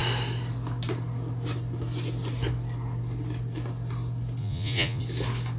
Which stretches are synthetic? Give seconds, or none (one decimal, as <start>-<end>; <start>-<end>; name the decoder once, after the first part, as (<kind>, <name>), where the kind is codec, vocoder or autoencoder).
4.4-5.0 (vocoder, Vocos)